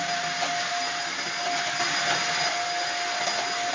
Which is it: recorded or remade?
recorded